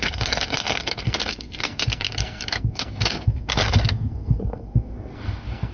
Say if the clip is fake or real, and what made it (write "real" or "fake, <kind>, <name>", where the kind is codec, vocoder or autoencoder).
fake, codec, SNAC